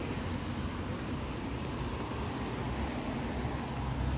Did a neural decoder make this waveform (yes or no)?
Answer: no